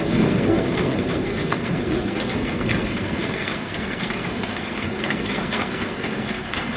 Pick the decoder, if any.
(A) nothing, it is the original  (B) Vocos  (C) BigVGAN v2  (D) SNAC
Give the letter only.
D